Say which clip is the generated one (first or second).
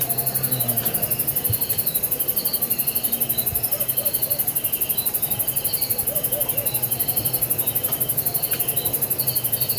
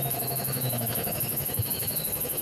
second